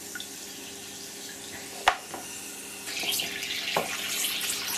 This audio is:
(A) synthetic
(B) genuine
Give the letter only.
B